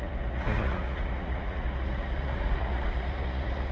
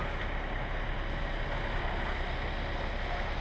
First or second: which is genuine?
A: second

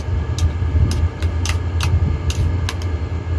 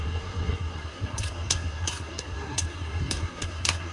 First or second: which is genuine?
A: first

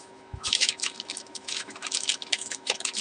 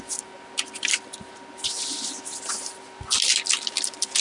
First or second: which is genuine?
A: second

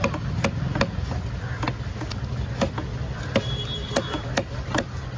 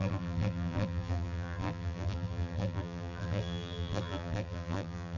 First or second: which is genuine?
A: first